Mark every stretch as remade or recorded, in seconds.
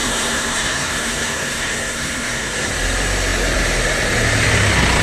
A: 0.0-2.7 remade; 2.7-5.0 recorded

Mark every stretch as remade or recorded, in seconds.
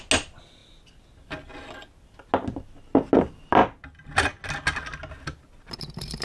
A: 0.0-6.2 recorded